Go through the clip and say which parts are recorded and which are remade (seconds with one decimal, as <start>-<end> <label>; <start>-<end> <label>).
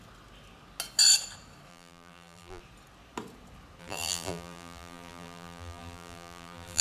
0.0-1.7 recorded; 1.7-2.6 remade; 2.6-3.8 recorded; 3.8-6.8 remade